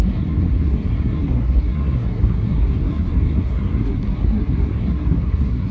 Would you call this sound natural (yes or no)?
no